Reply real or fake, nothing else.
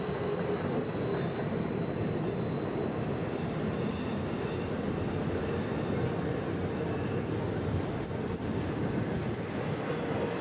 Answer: real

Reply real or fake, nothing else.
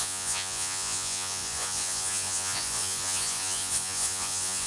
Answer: fake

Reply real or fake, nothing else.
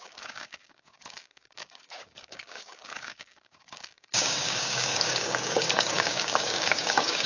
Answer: fake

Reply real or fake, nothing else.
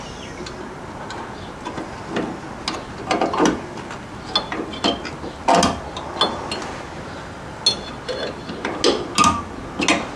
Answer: real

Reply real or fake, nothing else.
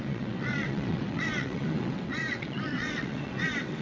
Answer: fake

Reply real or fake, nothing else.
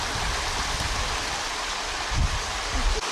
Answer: real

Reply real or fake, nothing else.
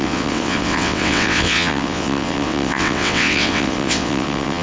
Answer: fake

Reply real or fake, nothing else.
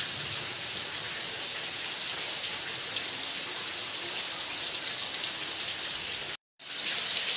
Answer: real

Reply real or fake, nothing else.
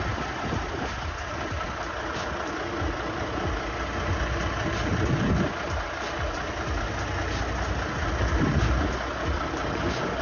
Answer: real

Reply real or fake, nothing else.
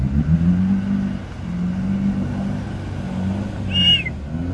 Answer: real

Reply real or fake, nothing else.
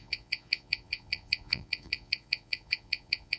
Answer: fake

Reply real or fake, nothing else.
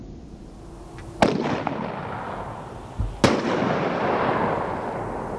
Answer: real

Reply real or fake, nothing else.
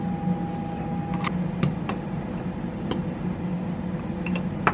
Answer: real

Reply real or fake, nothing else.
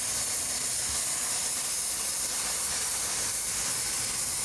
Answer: real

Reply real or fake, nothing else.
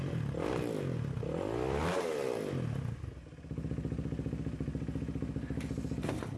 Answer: real